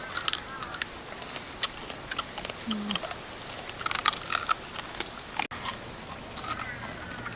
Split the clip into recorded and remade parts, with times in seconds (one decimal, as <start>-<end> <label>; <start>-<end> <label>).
0.0-7.4 recorded

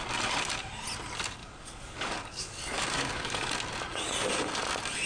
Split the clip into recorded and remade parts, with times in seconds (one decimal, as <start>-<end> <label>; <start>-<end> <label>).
0.0-1.4 recorded; 1.4-3.5 remade; 3.5-5.1 recorded